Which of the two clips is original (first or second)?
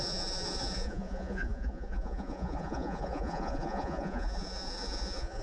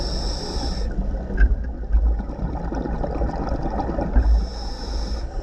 second